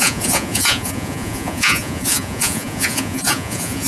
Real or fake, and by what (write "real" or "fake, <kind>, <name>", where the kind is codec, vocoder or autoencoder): fake, vocoder, Vocos